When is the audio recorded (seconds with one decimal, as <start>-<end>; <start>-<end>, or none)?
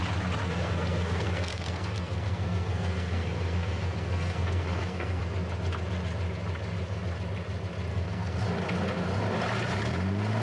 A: 0.0-0.4; 5.2-7.9; 8.4-10.4